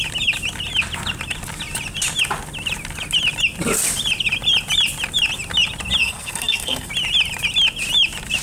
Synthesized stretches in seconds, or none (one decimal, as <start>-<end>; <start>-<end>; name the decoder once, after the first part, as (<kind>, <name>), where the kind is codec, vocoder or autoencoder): 6.0-6.9 (codec, SNAC)

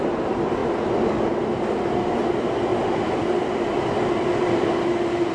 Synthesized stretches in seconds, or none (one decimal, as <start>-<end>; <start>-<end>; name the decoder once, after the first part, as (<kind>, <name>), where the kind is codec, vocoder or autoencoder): none

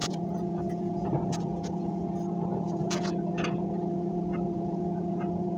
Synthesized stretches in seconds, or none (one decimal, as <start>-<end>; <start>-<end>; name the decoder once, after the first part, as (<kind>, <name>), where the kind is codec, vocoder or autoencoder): 0.0-2.0 (vocoder, Vocos); 2.5-5.6

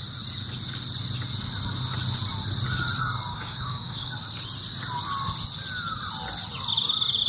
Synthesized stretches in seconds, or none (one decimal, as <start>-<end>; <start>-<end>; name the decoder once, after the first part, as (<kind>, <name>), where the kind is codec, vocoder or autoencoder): 3.3-4.1 (codec, DAC)